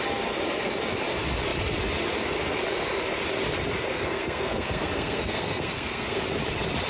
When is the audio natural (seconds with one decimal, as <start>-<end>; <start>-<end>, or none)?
0.0-3.9; 6.2-6.9